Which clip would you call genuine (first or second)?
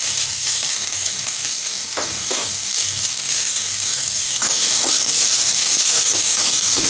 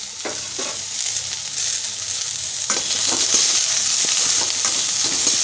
second